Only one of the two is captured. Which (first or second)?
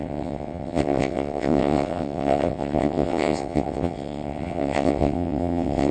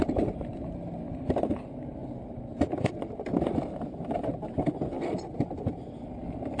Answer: second